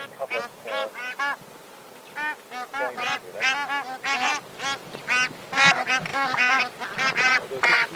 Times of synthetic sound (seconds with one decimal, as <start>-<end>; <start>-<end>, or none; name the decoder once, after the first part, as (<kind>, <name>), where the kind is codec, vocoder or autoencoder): 6.1-6.6 (autoencoder, DAC-VAE)